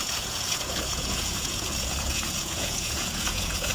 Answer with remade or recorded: remade